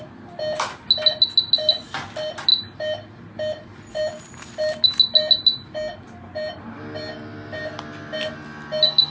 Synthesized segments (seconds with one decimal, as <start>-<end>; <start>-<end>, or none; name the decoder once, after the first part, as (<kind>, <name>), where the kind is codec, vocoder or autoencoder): none